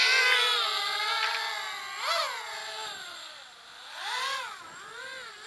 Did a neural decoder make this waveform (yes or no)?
no